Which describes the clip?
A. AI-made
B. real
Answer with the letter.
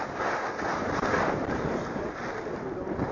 B